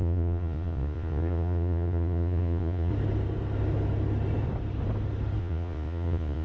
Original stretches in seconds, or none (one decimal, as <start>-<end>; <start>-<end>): 2.9-5.4